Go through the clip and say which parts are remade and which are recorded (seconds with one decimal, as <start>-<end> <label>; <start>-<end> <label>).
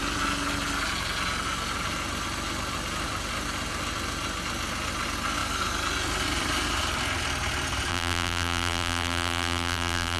0.0-7.9 recorded; 7.9-10.2 remade